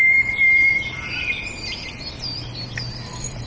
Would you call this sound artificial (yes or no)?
yes